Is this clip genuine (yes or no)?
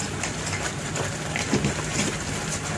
yes